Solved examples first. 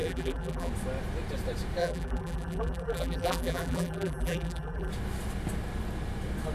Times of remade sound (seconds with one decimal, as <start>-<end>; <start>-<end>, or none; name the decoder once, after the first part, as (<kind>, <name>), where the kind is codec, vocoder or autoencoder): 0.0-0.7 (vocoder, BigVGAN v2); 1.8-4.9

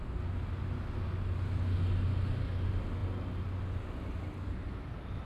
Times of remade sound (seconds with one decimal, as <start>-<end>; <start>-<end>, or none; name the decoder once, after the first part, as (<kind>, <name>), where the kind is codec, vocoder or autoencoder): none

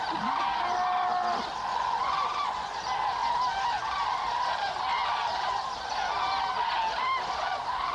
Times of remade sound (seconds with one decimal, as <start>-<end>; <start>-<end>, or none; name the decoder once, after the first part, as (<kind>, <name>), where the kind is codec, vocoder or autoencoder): 1.7-2.7 (vocoder, Vocos)

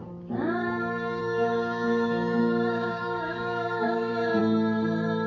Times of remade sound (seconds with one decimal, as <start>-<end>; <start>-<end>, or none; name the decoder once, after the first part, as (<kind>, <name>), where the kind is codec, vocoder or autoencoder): 1.2-4.4 (codec, DAC)